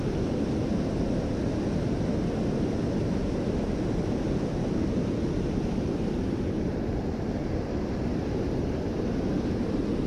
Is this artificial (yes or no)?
no